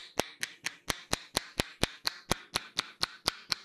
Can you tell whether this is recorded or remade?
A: recorded